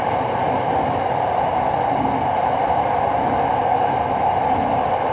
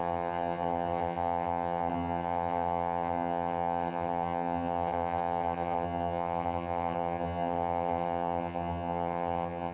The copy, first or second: second